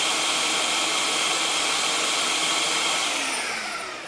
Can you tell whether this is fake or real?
real